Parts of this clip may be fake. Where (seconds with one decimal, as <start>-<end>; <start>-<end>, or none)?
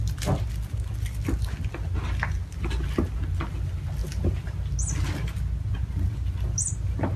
none